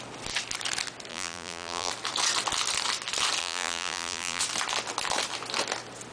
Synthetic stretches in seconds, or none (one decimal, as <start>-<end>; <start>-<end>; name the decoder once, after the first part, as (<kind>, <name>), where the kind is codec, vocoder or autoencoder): 1.1-1.9 (vocoder, BigVGAN v2); 3.4-4.4